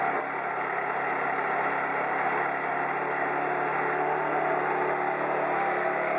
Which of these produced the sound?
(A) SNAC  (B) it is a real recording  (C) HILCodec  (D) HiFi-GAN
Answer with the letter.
B